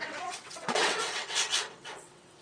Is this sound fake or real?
fake